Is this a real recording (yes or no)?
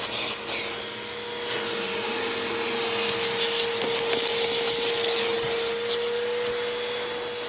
yes